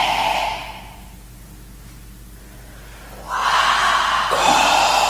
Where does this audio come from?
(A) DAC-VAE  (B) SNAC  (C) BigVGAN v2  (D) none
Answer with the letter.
D